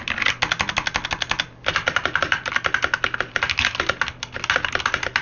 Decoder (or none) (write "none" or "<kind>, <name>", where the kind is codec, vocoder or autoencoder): none